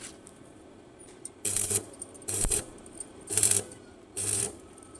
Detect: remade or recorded remade